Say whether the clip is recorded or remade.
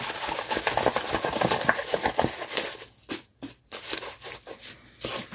recorded